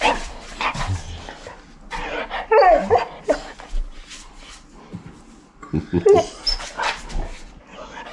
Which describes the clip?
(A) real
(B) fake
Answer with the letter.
A